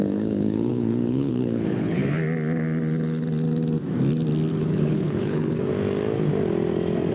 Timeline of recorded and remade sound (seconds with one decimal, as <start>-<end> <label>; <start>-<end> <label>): 0.0-2.0 remade; 2.0-4.5 recorded; 4.5-5.7 remade; 5.7-7.1 recorded

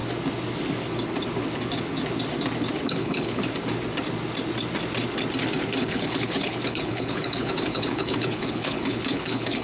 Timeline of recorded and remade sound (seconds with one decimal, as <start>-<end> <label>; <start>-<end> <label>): 0.0-2.9 recorded; 2.9-3.4 remade; 3.4-5.8 recorded; 5.8-9.6 remade

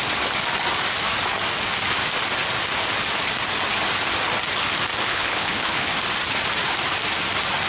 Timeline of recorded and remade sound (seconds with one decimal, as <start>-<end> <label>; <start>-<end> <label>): 0.0-5.0 recorded; 5.0-6.0 remade; 6.0-7.7 recorded